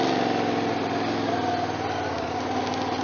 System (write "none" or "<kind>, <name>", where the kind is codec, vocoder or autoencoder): none